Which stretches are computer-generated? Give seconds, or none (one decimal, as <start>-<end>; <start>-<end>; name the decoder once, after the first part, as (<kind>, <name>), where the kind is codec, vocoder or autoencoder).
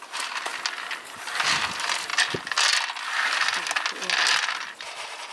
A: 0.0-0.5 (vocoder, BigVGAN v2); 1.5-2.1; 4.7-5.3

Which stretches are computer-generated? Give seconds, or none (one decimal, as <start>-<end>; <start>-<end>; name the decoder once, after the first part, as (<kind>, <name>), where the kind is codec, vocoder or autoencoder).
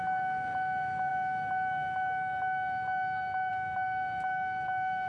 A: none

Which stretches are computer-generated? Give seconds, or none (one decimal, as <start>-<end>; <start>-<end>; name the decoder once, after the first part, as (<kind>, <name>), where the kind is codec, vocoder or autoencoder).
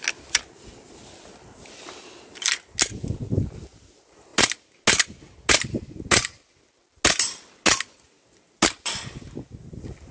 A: none